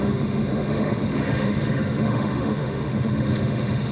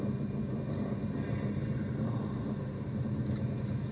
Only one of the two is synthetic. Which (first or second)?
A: first